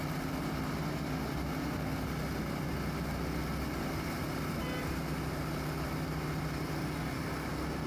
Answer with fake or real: real